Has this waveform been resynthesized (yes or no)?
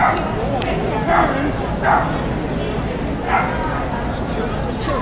no